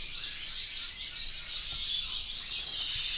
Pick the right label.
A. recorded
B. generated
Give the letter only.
A